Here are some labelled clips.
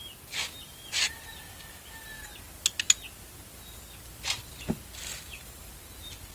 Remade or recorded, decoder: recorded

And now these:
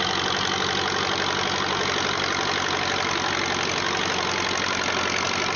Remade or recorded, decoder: recorded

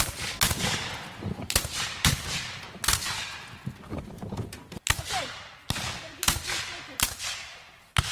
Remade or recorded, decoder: recorded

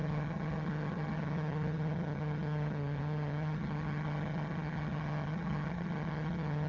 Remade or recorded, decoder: remade, vocoder, HiFi-GAN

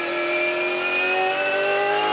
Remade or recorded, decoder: recorded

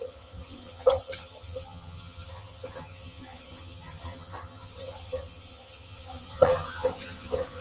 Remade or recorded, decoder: remade, vocoder, HiFi-GAN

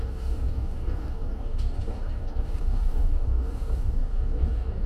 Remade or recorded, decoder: remade, codec, DAC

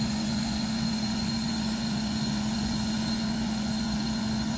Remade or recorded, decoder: remade, vocoder, Vocos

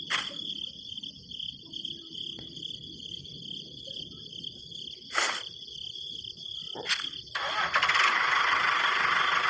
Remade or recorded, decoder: remade, vocoder, BigVGAN v2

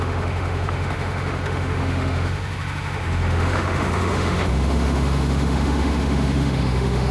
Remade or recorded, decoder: remade, autoencoder, DAC-VAE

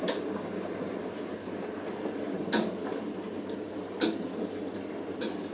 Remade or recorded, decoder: recorded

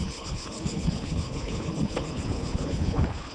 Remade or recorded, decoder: remade, codec, HILCodec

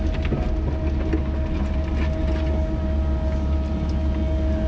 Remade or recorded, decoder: recorded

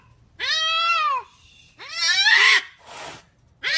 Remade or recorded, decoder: recorded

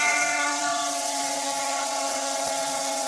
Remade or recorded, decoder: remade, vocoder, WaveNeXt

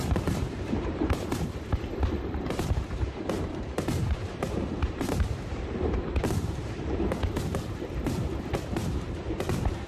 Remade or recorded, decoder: remade, vocoder, BigVGAN v2